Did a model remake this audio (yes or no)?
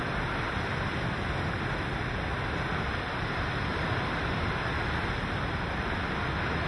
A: no